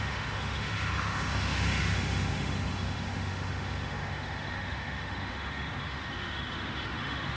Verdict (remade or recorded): remade